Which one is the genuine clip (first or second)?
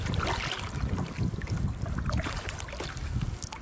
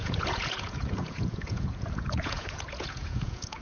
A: first